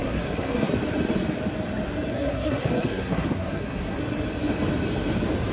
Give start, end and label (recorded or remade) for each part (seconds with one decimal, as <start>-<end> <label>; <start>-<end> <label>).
0.0-0.7 remade; 0.7-2.1 recorded; 2.1-4.0 remade; 4.0-5.5 recorded

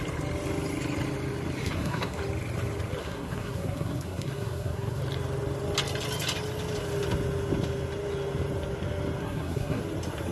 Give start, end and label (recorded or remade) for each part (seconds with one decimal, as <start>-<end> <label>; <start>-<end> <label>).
0.0-1.6 recorded; 1.6-2.2 remade; 2.2-3.0 recorded; 3.0-5.0 remade; 5.0-9.2 recorded; 9.2-9.8 remade; 9.8-10.3 recorded

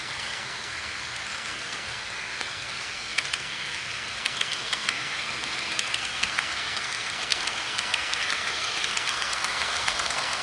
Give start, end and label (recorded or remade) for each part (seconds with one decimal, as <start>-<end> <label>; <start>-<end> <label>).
0.0-10.4 remade